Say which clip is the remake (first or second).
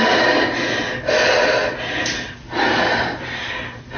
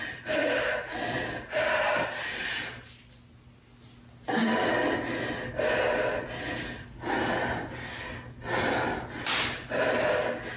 first